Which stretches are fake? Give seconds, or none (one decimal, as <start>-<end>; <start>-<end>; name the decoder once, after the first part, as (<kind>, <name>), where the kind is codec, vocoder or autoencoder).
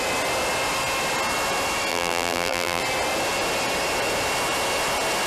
1.9-2.8 (vocoder, BigVGAN v2)